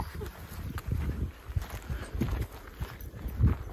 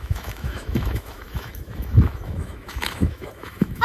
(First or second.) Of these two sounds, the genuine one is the first